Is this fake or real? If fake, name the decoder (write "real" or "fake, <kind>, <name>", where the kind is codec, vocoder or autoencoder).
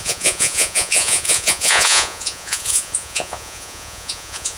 fake, vocoder, Vocos